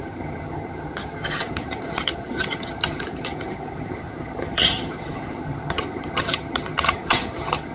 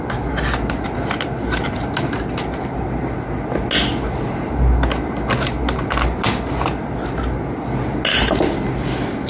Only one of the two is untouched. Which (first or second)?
second